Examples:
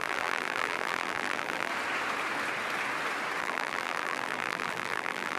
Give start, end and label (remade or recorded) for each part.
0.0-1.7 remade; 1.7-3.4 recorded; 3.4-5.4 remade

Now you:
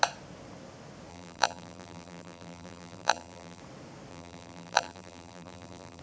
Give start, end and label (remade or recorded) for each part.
0.0-1.1 recorded; 1.1-3.6 remade; 3.6-4.1 recorded; 4.1-6.0 remade

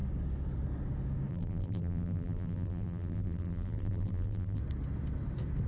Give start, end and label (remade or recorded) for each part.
0.0-1.3 recorded; 1.3-4.6 remade; 4.6-5.7 recorded

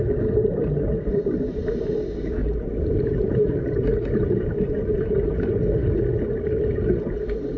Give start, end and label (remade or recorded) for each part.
0.0-0.4 recorded; 0.4-2.0 remade; 2.0-2.4 recorded; 2.4-4.7 remade; 4.7-7.6 recorded